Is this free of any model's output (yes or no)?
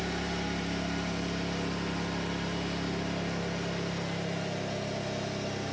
yes